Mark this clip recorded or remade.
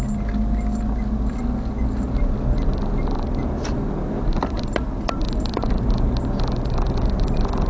recorded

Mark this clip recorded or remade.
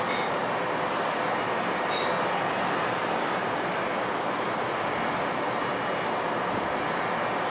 recorded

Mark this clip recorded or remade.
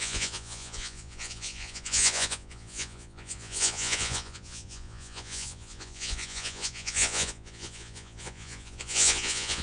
remade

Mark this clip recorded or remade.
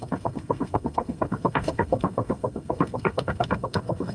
remade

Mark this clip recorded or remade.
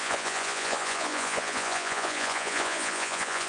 remade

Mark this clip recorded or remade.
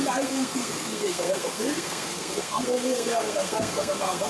remade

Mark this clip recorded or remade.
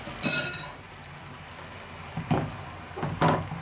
recorded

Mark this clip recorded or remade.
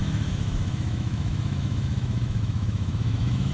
remade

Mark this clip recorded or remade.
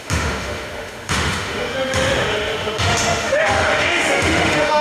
remade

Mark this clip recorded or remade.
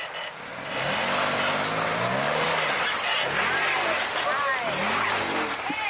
recorded